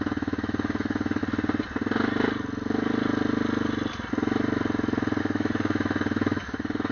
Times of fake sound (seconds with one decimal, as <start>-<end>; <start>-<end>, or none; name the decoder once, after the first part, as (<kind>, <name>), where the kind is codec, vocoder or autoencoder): 0.0-1.2 (autoencoder, DAC-VAE); 5.2-6.9